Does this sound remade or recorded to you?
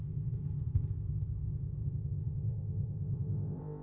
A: remade